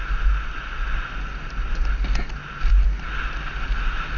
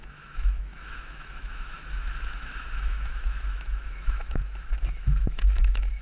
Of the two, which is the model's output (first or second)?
second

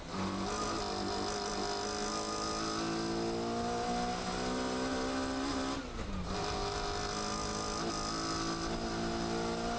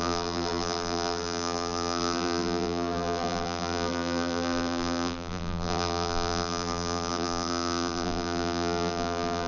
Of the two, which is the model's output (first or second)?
second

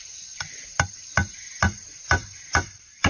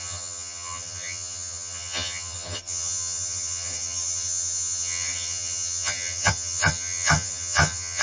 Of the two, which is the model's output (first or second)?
second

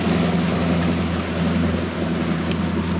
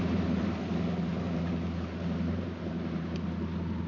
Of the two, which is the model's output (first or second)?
second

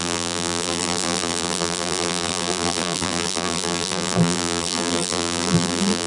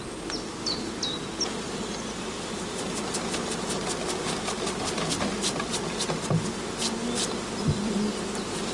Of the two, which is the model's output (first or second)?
first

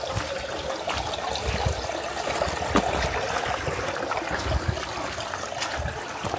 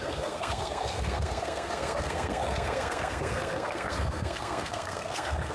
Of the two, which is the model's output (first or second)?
second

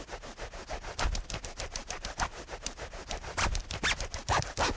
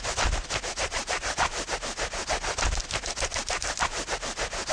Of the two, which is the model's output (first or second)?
first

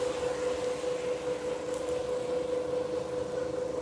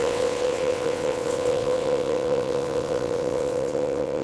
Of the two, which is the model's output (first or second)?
second